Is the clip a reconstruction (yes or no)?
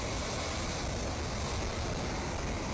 no